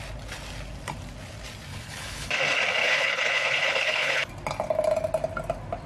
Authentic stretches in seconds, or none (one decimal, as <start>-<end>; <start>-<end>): 0.0-1.7; 2.3-2.8; 4.3-5.9